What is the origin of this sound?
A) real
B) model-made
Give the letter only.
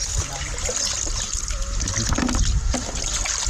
A